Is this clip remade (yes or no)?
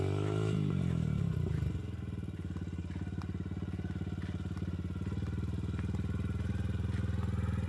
no